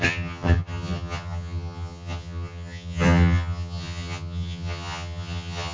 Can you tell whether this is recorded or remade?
remade